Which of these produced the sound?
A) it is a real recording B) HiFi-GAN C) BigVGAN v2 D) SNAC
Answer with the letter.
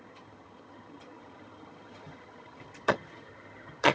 B